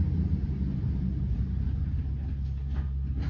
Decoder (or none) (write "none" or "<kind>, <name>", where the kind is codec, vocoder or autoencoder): none